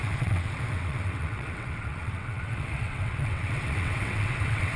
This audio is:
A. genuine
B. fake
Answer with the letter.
B